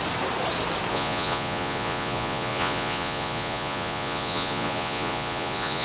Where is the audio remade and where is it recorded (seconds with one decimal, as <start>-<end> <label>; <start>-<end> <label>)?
0.0-0.9 recorded; 0.9-5.8 remade